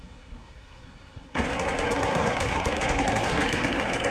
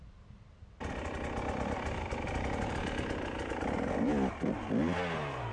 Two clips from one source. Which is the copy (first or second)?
first